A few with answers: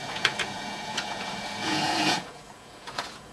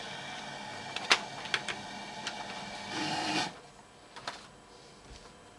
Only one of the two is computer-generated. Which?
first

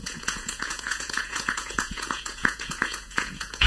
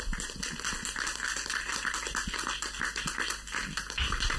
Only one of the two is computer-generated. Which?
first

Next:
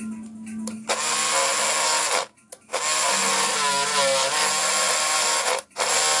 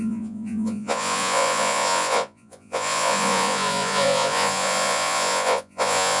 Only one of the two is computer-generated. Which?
second